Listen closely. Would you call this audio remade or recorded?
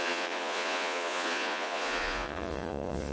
remade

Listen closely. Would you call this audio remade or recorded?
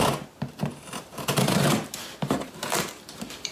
remade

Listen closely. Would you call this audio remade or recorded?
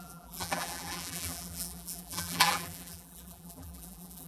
remade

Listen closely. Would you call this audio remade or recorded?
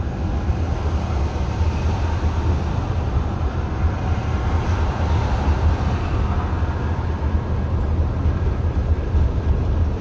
recorded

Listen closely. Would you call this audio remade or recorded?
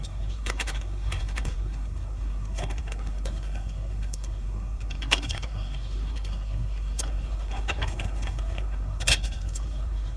remade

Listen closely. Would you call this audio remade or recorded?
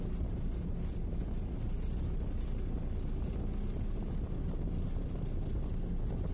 recorded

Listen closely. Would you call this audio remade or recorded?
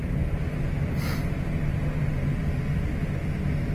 recorded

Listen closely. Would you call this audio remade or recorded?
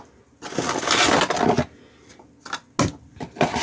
recorded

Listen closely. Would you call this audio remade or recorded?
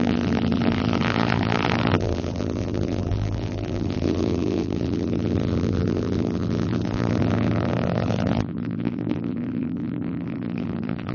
remade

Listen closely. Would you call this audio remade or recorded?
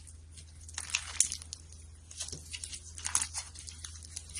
recorded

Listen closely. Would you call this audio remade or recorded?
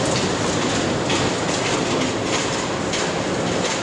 recorded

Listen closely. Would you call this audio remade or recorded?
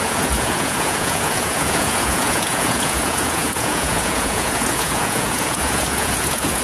remade